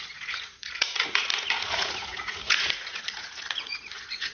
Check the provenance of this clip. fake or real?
fake